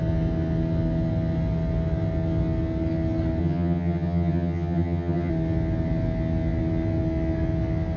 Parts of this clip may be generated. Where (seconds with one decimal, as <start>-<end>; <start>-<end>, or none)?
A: 3.4-5.3